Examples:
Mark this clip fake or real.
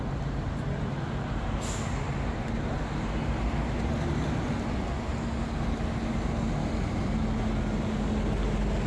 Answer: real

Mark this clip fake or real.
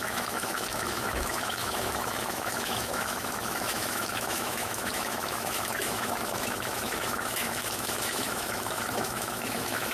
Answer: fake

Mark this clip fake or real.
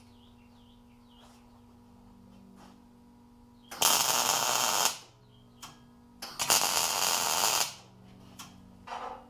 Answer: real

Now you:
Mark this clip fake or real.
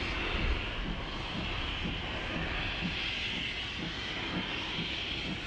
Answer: real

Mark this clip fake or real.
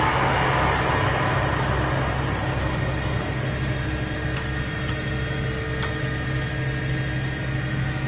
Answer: real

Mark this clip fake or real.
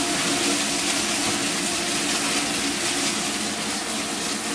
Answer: real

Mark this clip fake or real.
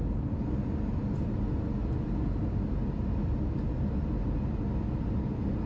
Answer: real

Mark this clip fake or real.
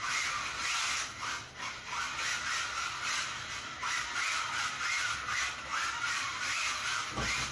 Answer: real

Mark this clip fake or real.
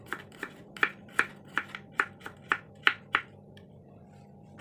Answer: real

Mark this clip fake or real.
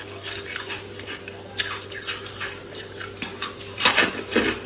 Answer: real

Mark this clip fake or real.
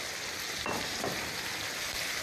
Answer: real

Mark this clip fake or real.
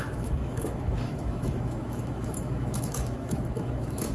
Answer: fake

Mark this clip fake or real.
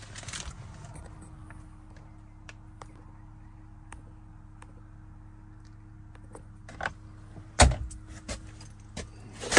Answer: real